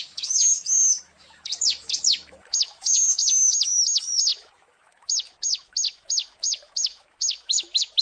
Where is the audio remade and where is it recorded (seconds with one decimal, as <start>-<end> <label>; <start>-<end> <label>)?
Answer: 0.0-8.0 remade